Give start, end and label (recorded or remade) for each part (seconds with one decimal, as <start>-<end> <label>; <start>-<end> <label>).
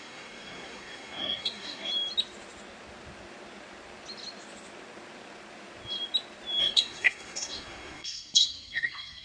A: 0.0-1.9 remade; 1.9-6.6 recorded; 6.6-9.2 remade